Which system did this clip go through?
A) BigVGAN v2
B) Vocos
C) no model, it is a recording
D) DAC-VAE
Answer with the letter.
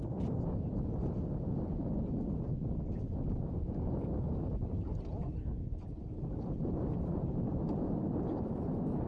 C